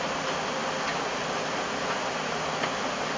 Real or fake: real